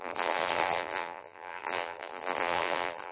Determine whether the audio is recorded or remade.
remade